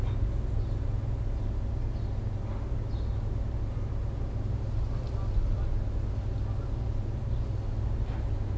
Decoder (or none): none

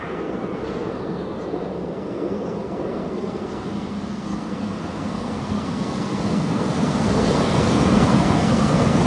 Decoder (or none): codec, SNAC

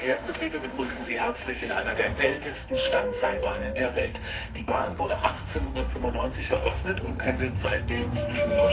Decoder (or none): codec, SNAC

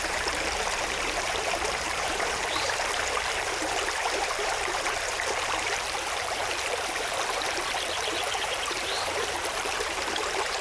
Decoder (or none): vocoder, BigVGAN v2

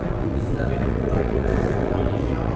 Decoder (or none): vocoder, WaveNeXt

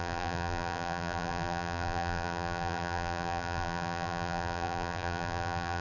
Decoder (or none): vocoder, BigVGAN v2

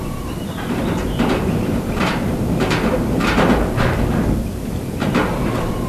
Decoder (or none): vocoder, BigVGAN v2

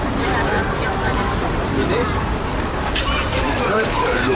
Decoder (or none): vocoder, BigVGAN v2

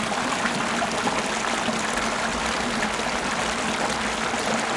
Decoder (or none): none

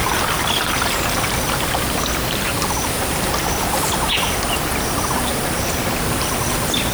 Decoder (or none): none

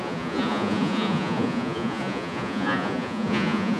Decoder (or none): vocoder, Vocos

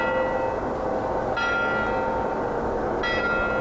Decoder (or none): none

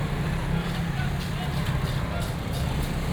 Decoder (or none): none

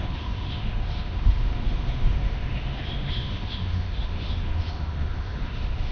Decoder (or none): autoencoder, DAC-VAE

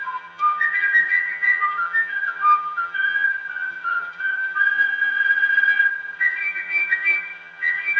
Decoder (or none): vocoder, HiFi-GAN